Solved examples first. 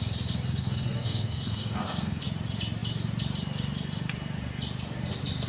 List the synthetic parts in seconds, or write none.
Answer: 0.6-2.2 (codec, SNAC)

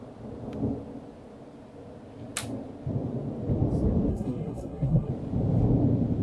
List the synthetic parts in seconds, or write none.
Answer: 4.1-5.1 (codec, SNAC)

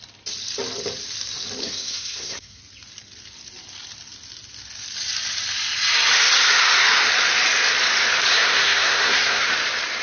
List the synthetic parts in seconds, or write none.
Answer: 1.6-2.6 (codec, SNAC); 8.3-9.5

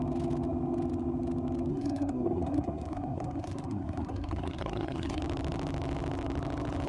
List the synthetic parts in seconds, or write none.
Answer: 1.7-5.2 (codec, SNAC)

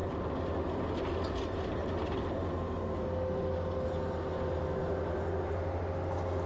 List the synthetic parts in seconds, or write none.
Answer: none

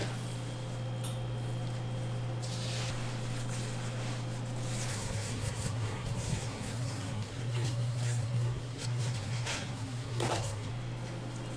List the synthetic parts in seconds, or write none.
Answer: 4.9-10.7 (codec, SNAC)

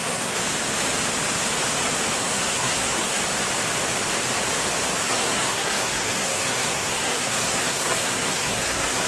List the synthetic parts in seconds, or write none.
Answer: 0.0-0.4 (codec, SNAC); 2.2-3.2; 5.0-9.1

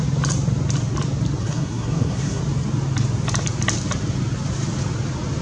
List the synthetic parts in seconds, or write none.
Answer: 1.4-2.4 (codec, SNAC)